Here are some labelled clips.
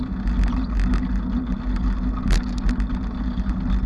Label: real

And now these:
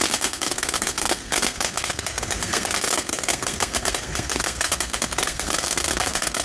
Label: fake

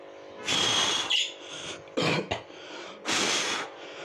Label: real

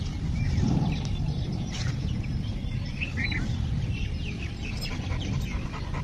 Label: fake